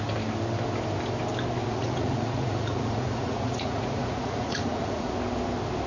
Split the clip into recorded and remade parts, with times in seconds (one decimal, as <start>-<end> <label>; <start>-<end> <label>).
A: 0.0-1.6 recorded; 1.6-5.1 remade; 5.1-5.9 recorded

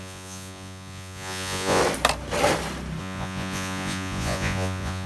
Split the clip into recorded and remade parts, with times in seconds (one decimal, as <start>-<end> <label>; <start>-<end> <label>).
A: 0.0-1.8 remade; 1.8-3.0 recorded; 3.0-5.1 remade

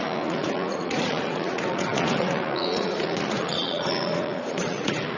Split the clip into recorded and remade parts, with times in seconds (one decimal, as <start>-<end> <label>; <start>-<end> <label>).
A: 0.0-5.2 remade

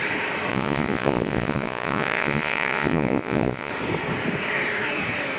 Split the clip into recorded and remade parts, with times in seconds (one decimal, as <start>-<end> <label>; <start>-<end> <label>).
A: 0.0-0.5 recorded; 0.5-3.7 remade; 3.7-5.4 recorded

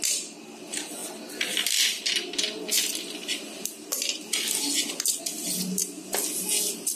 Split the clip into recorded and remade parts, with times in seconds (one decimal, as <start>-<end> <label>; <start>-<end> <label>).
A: 0.0-7.0 recorded